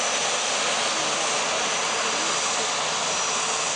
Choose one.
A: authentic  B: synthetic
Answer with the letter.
A